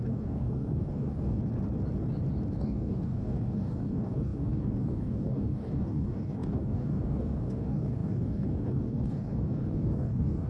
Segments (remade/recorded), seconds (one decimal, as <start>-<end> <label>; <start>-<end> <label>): 0.0-1.4 remade; 1.4-2.6 recorded; 2.6-10.5 remade